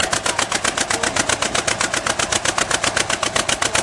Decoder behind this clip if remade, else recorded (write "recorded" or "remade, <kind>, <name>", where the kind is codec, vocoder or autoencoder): recorded